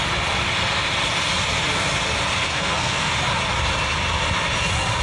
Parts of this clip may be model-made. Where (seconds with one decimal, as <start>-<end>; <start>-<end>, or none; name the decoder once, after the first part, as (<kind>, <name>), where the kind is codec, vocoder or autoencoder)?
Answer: 2.4-3.1 (codec, SNAC)